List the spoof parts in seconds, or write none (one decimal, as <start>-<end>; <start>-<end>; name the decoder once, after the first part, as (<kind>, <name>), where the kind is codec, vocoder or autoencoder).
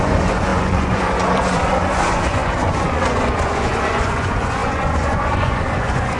0.0-6.2 (vocoder, Vocos)